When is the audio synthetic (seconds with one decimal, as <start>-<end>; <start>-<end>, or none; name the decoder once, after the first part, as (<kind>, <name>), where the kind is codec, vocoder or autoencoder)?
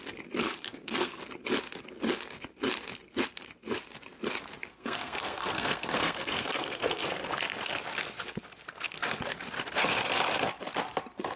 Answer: 0.4-1.2 (codec, SNAC); 4.7-7.0